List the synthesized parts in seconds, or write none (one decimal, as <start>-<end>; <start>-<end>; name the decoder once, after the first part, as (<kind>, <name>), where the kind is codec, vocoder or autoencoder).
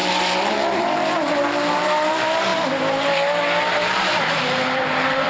0.0-2.5 (vocoder, BigVGAN v2); 3.9-5.3